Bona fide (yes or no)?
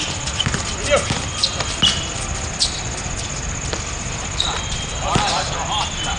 yes